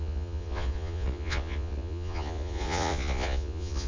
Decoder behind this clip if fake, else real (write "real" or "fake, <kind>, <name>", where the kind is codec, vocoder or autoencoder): fake, vocoder, Vocos